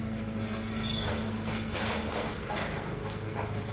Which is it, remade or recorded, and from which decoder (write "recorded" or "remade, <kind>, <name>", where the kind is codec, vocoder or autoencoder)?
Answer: remade, codec, SNAC